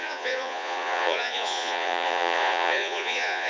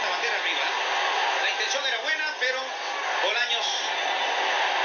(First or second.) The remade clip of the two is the first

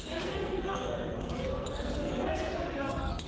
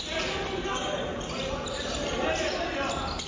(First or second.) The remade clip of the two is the first